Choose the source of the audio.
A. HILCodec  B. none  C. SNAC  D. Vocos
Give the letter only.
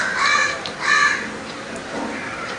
B